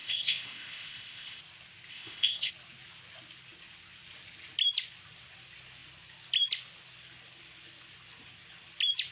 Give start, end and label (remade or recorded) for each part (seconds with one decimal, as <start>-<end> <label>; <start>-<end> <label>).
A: 0.0-1.4 remade; 1.4-1.9 recorded; 1.9-2.5 remade; 2.5-9.1 recorded